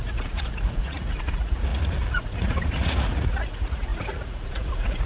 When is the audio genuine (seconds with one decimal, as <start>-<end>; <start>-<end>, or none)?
none